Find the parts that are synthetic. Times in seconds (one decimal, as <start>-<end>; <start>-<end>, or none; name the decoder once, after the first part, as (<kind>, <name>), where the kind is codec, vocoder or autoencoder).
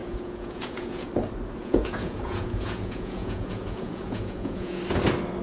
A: 0.0-1.1 (vocoder, Vocos); 1.6-4.8